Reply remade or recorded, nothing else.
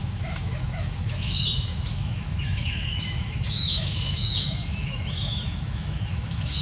remade